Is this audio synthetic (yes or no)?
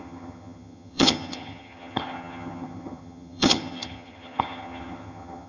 yes